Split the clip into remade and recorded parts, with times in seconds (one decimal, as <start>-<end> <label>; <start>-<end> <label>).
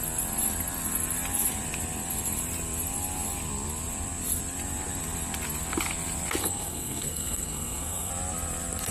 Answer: 0.0-6.4 recorded; 6.4-8.1 remade; 8.1-8.9 recorded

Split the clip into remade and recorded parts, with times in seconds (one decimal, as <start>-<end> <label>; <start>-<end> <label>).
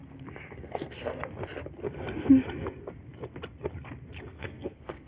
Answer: 0.0-0.5 recorded; 0.5-1.1 remade; 1.1-4.2 recorded; 4.2-5.1 remade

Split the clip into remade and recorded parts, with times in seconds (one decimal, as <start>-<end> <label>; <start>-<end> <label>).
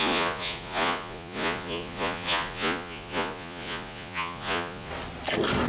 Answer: 0.0-4.9 remade; 4.9-5.7 recorded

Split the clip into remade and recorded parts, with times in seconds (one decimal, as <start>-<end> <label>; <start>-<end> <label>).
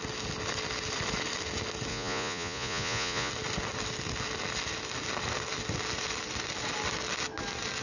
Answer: 0.0-1.9 recorded; 1.9-3.3 remade; 3.3-7.8 recorded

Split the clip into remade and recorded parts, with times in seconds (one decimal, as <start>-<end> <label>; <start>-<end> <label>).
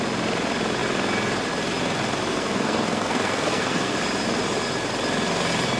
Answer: 0.0-2.3 recorded; 2.3-4.0 remade; 4.0-5.8 recorded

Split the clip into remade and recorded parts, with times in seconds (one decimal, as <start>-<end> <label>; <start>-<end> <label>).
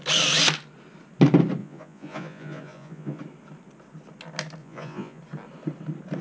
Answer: 0.0-1.6 recorded; 1.6-3.2 remade; 3.2-4.6 recorded; 4.6-5.2 remade; 5.2-6.2 recorded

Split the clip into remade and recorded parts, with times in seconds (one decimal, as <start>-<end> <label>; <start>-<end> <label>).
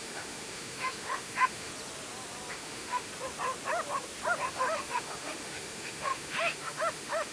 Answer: 0.0-1.7 remade; 1.7-2.5 recorded; 2.5-3.1 remade; 3.1-4.5 recorded; 4.5-7.3 remade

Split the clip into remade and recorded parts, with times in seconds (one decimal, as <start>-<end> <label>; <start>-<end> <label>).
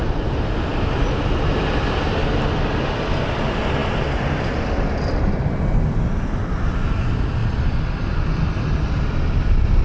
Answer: 0.0-9.8 recorded